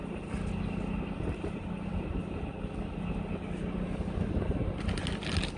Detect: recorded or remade recorded